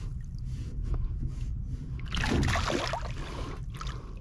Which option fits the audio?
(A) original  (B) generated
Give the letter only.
A